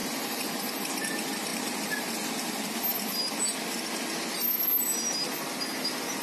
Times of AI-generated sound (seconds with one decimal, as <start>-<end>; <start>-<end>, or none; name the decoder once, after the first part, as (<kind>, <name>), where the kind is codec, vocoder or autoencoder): 0.0-0.6 (vocoder, BigVGAN v2)